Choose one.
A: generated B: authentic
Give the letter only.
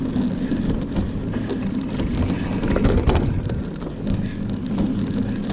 B